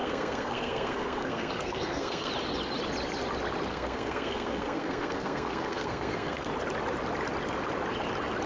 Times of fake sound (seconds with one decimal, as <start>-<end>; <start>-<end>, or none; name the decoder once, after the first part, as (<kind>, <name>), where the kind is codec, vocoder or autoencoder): 0.0-2.3 (codec, SNAC); 3.7-6.5